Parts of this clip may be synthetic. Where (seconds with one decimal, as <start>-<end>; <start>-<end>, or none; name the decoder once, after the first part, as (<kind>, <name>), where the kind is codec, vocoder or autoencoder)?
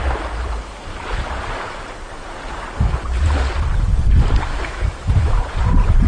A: 4.5-5.4 (autoencoder, DAC-VAE)